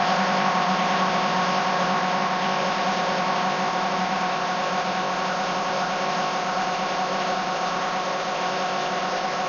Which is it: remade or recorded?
remade